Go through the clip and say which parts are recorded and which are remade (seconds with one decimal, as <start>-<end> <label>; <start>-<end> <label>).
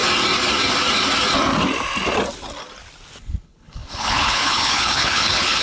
0.0-3.2 recorded; 3.2-5.6 remade